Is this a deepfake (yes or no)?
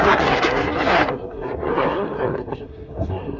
yes